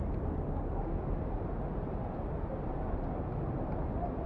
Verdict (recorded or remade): recorded